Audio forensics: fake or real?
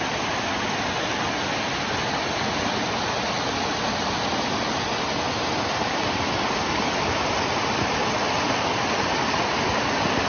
real